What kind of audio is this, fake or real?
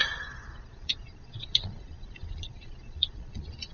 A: fake